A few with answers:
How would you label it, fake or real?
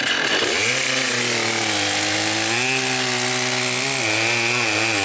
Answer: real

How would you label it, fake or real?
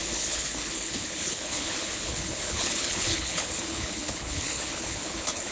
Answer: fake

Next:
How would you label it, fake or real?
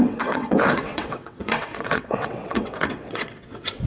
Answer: fake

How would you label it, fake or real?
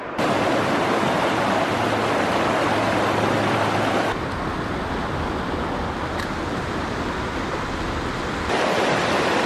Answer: real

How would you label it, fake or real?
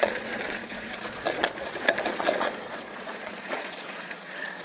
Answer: fake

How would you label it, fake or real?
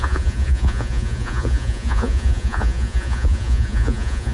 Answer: fake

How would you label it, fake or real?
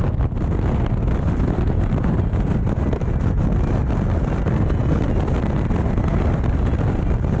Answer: real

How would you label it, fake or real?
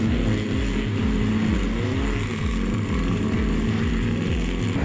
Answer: real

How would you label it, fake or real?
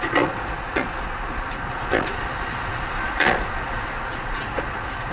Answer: fake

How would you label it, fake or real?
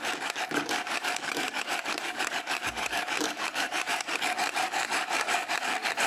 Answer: fake